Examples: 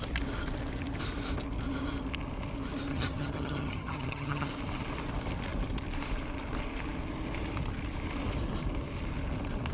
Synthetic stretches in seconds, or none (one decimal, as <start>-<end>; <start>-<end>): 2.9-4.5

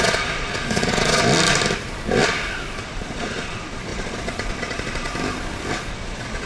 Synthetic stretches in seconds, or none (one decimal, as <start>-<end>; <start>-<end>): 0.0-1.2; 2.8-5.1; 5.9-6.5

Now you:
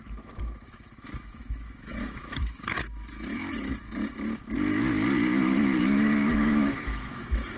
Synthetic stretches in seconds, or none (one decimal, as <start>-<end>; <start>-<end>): 0.0-3.7; 5.8-7.6

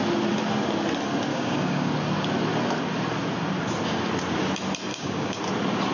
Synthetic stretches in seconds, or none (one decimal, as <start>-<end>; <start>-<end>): 1.3-1.9; 4.9-5.4